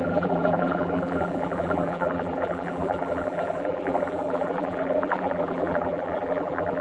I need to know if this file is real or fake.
fake